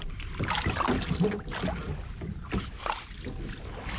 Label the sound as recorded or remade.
recorded